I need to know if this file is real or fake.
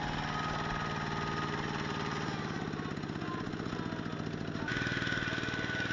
real